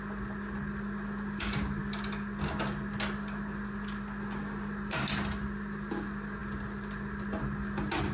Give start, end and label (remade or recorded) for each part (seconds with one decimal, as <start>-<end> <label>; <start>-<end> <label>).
0.0-8.1 recorded